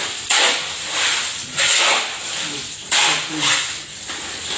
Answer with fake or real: real